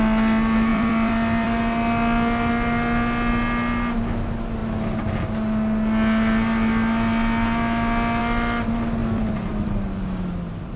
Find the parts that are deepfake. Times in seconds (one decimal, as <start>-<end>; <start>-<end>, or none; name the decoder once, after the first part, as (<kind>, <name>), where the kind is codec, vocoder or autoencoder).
0.7-1.6 (vocoder, BigVGAN v2); 9.0-9.6